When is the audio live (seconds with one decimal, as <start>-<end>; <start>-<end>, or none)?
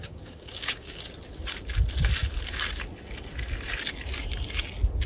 1.0-5.1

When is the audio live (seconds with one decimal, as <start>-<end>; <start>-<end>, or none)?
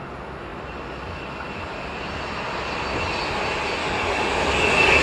0.0-3.8